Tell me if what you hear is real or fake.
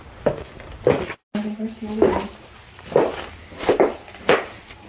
real